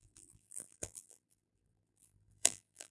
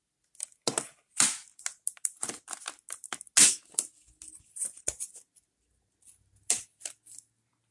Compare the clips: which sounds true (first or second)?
second